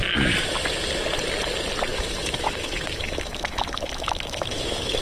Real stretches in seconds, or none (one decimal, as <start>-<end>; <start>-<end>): 0.0-1.9